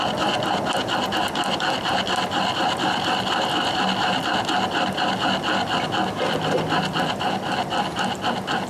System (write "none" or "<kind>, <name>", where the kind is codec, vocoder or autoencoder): none